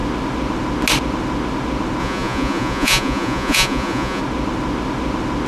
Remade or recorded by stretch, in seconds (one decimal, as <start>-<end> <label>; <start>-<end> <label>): 0.0-2.0 recorded; 2.0-4.2 remade; 4.2-5.5 recorded